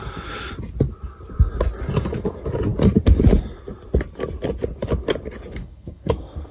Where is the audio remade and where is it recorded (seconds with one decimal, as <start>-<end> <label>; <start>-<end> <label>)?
0.0-5.6 recorded; 5.6-6.5 remade